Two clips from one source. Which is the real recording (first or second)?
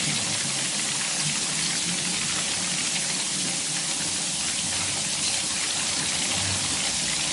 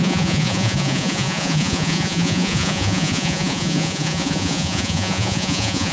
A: first